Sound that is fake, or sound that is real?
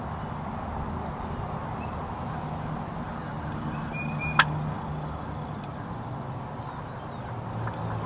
real